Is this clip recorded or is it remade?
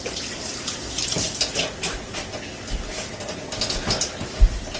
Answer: recorded